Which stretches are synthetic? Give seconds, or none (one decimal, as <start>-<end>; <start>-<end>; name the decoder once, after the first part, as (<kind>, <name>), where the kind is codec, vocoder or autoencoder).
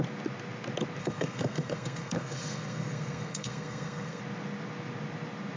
1.0-4.2 (codec, SNAC)